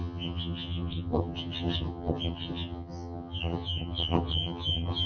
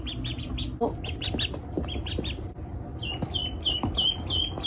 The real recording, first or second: second